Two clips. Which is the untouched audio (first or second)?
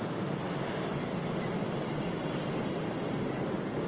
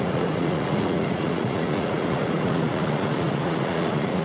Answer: first